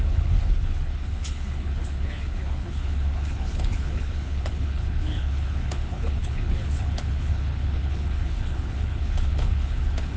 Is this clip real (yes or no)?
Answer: no